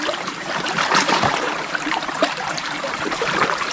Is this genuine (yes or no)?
no